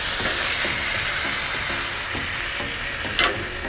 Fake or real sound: real